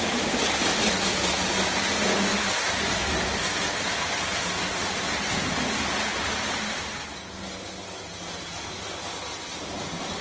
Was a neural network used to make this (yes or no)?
no